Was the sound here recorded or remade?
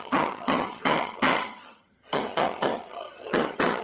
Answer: remade